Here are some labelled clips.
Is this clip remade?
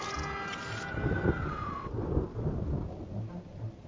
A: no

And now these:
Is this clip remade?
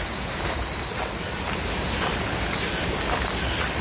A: no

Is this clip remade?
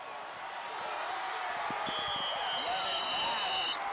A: no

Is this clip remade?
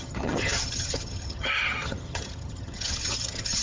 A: yes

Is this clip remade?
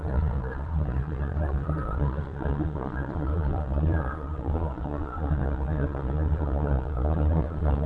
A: yes